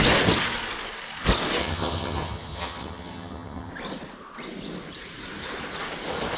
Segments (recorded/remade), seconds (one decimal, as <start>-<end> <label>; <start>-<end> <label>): 0.0-1.6 recorded; 1.6-3.7 remade; 3.7-6.4 recorded